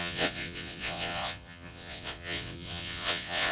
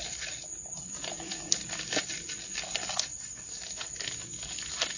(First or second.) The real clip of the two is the second